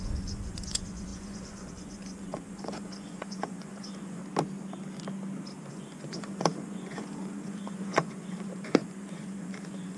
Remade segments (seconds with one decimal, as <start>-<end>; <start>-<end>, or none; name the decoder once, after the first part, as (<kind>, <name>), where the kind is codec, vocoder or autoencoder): 0.0-4.2 (vocoder, Vocos); 5.7-10.0

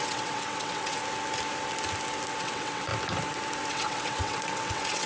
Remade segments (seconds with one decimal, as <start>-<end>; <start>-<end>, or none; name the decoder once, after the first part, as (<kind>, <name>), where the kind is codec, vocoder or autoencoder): 0.0-1.0 (vocoder, WaveNeXt); 2.4-2.9; 3.7-5.1

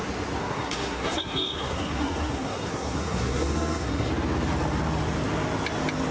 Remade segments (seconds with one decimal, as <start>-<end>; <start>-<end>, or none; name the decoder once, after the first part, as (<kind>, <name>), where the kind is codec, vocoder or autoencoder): 0.4-4.1 (codec, SNAC)

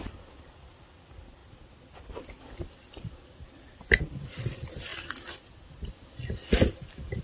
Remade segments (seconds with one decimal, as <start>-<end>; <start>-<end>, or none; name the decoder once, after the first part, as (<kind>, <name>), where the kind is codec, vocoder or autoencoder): 0.0-1.4 (vocoder, BigVGAN v2); 4.0-4.9

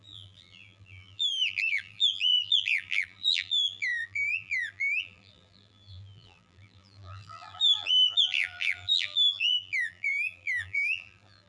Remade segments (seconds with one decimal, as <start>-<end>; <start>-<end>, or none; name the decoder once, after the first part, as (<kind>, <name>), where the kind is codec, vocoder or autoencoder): 0.0-11.5 (vocoder, BigVGAN v2)

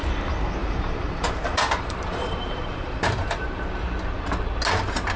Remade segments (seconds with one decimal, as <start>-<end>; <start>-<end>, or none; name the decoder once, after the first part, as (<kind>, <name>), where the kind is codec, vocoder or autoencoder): 0.6-3.7 (vocoder, BigVGAN v2)

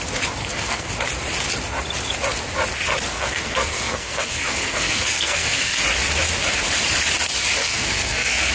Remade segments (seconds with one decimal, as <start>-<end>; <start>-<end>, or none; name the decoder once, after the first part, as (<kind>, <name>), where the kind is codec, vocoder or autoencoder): 0.4-0.9 (codec, SNAC); 3.1-5.8; 7.6-8.5

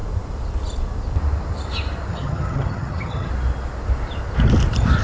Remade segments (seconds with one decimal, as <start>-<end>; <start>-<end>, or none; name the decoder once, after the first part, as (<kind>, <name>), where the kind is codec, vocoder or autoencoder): 2.1-3.3 (vocoder, HiFi-GAN)